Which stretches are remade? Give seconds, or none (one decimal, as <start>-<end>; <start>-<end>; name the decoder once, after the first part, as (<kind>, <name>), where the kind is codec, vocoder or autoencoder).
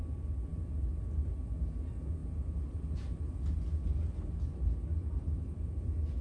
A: none